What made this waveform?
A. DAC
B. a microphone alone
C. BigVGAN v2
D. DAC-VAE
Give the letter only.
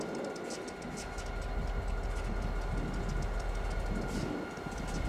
B